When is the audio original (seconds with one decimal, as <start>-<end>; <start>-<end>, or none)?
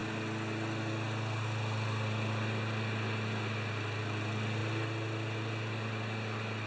0.0-6.7